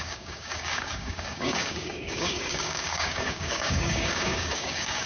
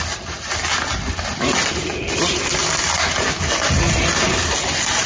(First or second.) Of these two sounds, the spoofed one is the first